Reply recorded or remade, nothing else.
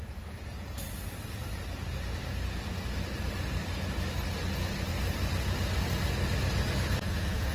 recorded